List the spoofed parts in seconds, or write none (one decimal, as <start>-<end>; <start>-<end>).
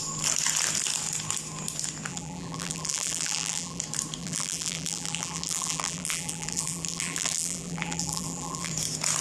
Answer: 2.1-3.8; 4.2-8.7